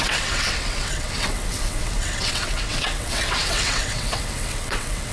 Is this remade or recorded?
remade